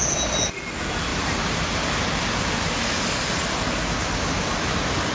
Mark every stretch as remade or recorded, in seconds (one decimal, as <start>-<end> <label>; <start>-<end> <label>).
0.0-1.1 recorded; 1.1-1.8 remade; 1.8-5.1 recorded